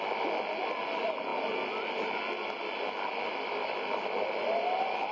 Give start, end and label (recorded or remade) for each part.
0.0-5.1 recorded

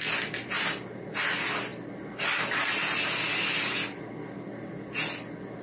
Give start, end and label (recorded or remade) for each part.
0.0-5.6 recorded

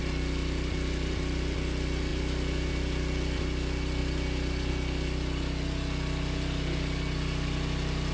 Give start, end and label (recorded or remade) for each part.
0.0-8.1 recorded

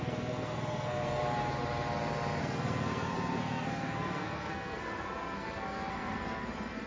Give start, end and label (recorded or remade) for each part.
0.0-1.2 remade; 1.2-2.4 recorded; 2.4-6.9 remade

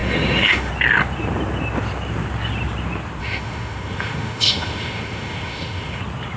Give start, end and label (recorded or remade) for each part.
0.0-0.7 remade; 0.7-3.2 recorded; 3.2-6.0 remade; 6.0-6.4 recorded

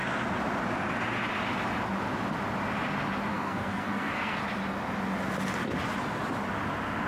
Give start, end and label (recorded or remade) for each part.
0.0-3.3 recorded; 3.3-4.4 remade; 4.4-7.1 recorded